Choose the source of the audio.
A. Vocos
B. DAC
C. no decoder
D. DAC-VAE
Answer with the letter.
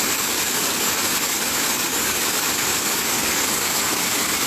B